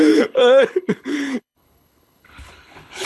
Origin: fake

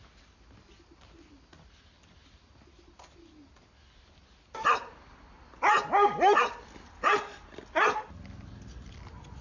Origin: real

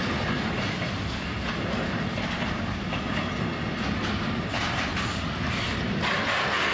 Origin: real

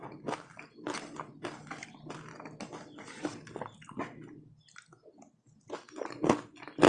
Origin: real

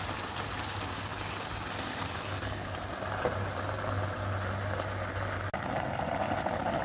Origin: real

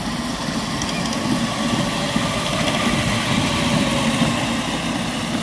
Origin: real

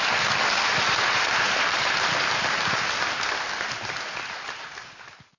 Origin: real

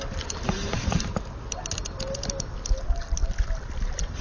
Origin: real